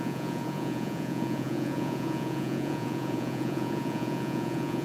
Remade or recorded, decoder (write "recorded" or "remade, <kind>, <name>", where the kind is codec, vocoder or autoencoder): remade, vocoder, Vocos